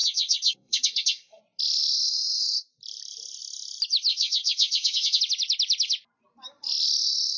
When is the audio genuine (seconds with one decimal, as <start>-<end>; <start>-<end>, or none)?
1.4-4.1; 5.2-7.4